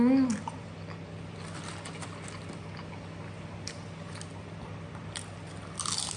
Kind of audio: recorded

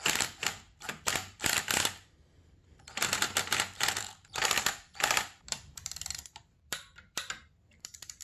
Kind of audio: remade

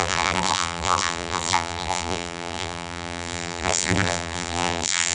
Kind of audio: remade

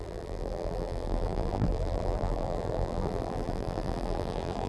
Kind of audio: remade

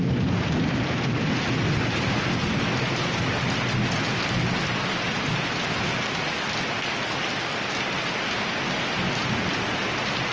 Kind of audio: recorded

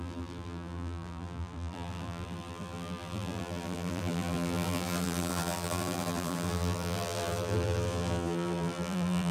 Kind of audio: remade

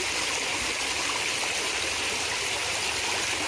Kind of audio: recorded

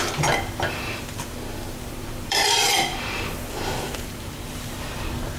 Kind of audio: remade